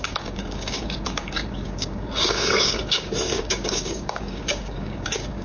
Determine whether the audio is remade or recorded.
remade